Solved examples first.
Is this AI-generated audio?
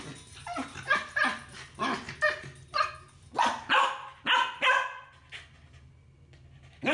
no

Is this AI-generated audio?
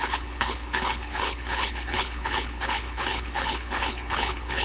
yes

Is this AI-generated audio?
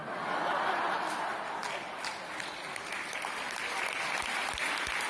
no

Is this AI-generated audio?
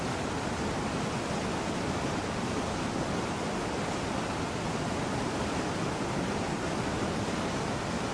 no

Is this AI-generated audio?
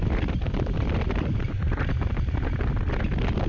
no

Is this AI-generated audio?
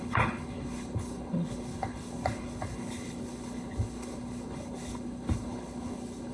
yes